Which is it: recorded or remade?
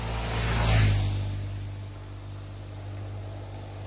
recorded